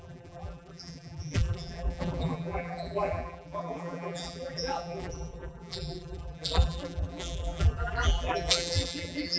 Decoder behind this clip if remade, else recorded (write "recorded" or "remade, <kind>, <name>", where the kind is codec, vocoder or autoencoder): remade, vocoder, BigVGAN v2